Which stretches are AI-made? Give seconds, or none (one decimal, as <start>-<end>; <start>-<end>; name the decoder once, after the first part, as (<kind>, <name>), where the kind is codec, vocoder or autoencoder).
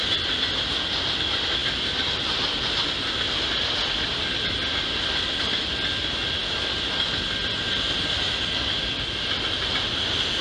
none